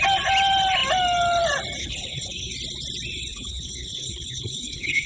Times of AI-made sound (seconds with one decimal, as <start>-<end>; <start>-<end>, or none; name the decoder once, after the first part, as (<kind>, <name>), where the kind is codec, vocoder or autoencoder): 1.8-2.5 (codec, HILCodec); 3.3-5.1